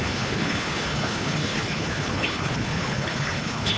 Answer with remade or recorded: remade